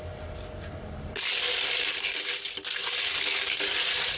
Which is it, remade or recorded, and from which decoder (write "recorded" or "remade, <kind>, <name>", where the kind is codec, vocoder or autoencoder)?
recorded